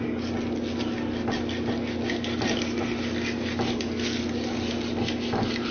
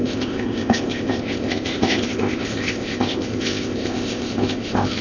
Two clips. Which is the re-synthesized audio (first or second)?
second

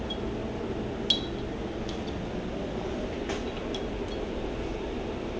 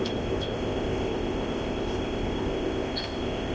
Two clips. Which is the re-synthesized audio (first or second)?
second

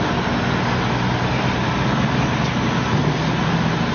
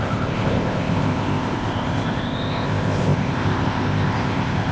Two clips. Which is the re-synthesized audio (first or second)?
second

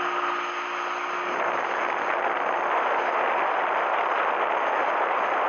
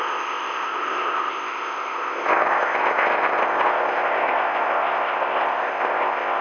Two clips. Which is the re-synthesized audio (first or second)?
second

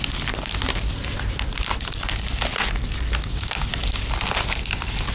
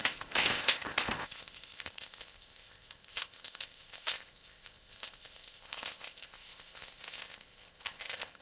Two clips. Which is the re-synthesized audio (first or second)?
second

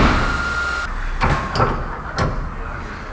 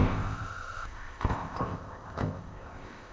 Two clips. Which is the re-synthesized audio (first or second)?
second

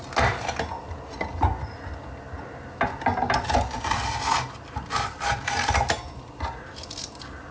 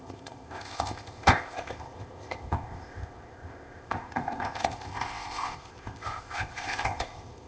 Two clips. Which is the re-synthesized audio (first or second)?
second